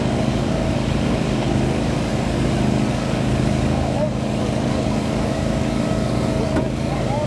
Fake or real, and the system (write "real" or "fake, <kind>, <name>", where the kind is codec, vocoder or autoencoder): fake, codec, DAC